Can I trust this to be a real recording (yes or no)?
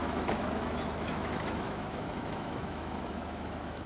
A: no